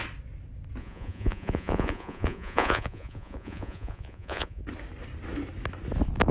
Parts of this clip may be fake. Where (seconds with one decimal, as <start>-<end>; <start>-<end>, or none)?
0.8-4.6